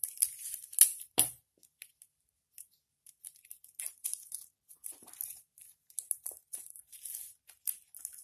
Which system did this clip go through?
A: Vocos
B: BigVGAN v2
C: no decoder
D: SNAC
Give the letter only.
C